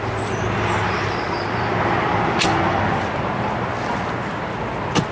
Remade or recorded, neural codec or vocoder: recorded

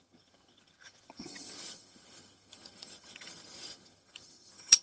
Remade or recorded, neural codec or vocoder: remade, vocoder, HiFi-GAN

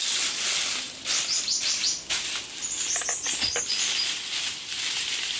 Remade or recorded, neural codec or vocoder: recorded